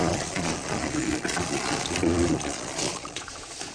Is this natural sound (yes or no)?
no